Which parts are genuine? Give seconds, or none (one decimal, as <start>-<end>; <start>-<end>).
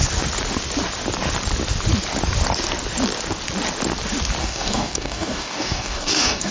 0.0-4.4